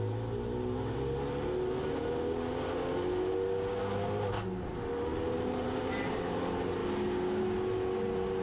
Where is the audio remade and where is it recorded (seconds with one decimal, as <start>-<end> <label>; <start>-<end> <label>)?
0.0-5.1 recorded; 5.1-6.2 remade; 6.2-8.4 recorded